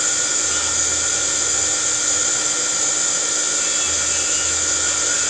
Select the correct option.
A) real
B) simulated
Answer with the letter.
A